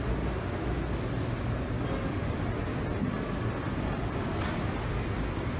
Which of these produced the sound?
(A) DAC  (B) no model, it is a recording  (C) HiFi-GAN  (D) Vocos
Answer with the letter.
B